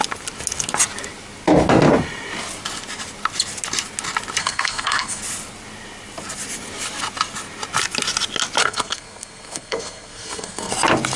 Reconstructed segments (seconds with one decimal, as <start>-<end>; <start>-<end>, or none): 4.4-5.2; 8.6-10.7